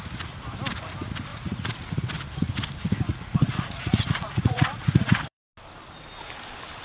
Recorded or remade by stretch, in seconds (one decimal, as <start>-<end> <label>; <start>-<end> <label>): 0.0-1.3 recorded; 1.3-2.0 remade; 2.0-3.1 recorded; 3.1-5.4 remade; 5.4-6.8 recorded

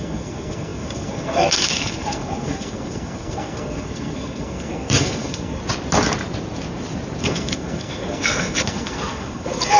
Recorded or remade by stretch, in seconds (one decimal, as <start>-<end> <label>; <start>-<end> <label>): 0.0-5.6 remade; 5.6-7.2 recorded; 7.2-9.8 remade